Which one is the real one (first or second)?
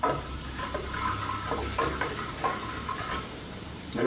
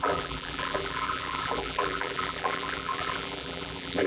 first